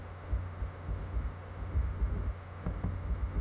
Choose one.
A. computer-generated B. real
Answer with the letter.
A